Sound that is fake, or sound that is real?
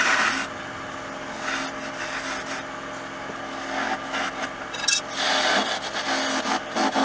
real